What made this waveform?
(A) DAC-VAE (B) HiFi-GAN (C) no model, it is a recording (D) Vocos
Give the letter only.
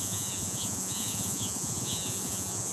D